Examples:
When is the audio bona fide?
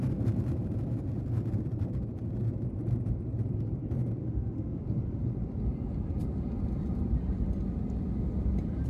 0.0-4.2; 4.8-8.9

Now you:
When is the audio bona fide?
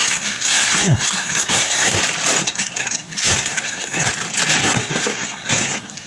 2.0-2.4; 4.1-4.6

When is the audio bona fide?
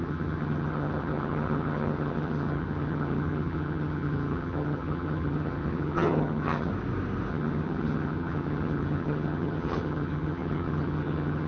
6.7-7.3